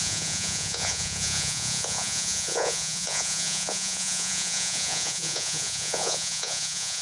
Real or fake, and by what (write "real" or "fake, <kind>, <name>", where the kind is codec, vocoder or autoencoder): fake, vocoder, Vocos